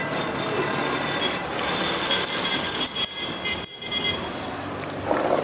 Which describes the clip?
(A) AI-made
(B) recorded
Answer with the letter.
B